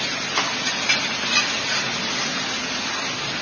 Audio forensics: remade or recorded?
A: recorded